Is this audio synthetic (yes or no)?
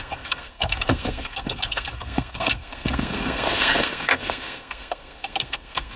yes